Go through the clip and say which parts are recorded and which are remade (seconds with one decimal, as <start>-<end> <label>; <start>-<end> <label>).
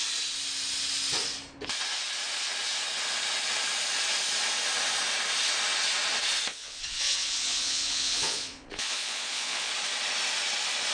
0.0-6.5 recorded; 6.5-9.7 remade; 9.7-10.9 recorded